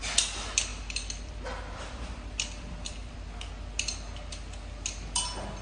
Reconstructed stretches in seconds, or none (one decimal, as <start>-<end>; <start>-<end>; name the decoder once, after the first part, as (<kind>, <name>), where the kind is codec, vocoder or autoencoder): 0.7-3.2 (vocoder, BigVGAN v2)